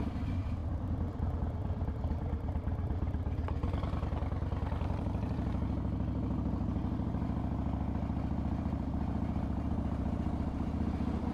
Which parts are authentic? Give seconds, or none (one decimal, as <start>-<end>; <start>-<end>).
3.6-5.0; 6.8-8.5